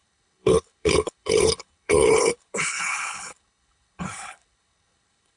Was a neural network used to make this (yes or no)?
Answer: yes